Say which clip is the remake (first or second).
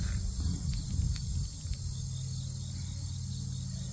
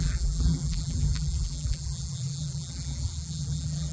second